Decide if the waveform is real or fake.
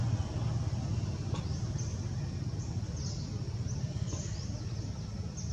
real